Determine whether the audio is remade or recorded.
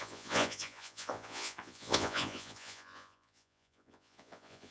remade